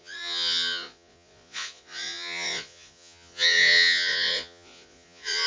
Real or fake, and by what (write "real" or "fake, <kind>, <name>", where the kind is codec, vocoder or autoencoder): fake, vocoder, Vocos